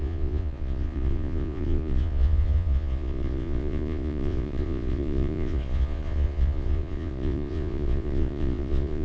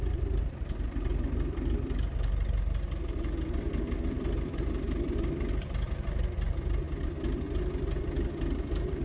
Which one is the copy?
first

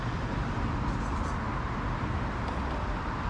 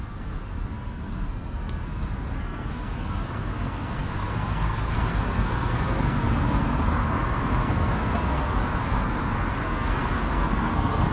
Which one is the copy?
second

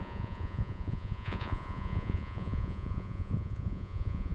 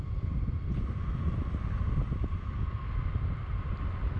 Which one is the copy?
first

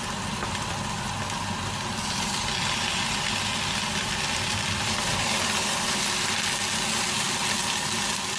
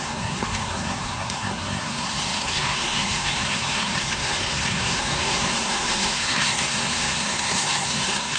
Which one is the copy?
second